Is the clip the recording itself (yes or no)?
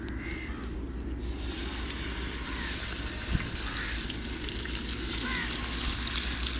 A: yes